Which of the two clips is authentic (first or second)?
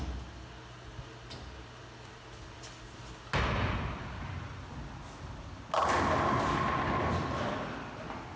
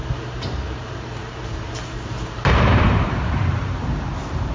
first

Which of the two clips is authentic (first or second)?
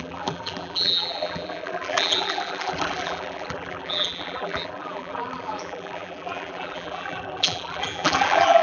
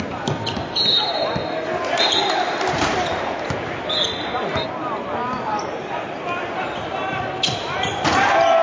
second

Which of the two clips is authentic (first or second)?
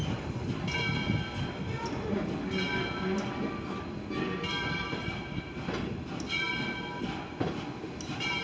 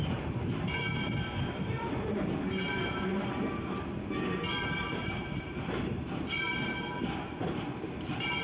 first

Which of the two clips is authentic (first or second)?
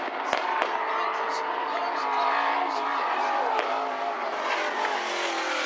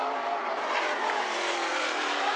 first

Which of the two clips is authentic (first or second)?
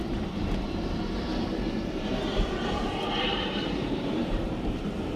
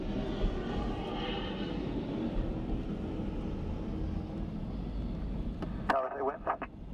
second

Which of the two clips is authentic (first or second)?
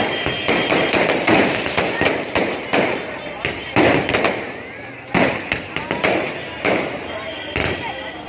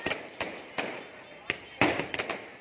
second